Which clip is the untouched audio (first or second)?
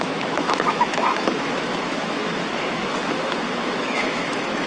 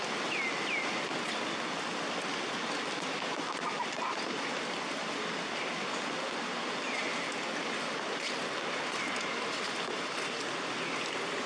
second